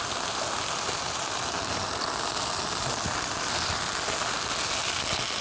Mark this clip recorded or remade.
recorded